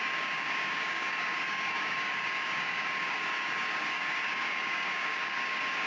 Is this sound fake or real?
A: fake